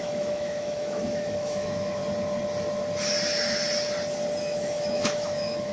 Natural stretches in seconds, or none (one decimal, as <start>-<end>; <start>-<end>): 2.0-4.4

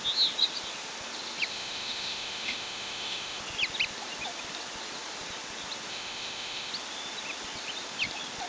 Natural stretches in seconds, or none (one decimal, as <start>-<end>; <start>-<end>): 0.0-1.5; 3.4-5.9; 6.7-8.5